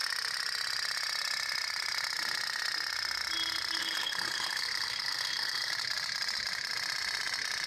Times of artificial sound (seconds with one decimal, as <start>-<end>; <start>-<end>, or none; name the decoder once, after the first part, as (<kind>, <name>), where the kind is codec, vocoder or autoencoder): 3.8-5.7 (codec, SNAC)